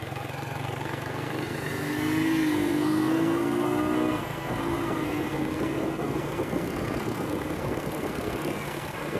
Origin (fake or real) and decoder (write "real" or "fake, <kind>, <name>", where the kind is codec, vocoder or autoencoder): fake, codec, SNAC